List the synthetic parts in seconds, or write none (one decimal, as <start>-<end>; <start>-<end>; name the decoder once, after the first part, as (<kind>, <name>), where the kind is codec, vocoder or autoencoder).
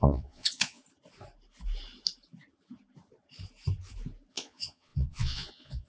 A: 0.0-0.8 (vocoder, Vocos); 4.3-5.9